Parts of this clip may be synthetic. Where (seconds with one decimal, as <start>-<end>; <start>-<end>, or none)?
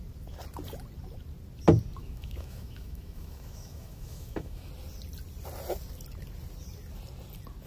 2.0-4.7